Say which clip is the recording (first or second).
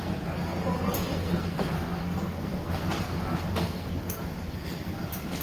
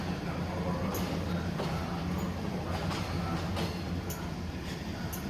second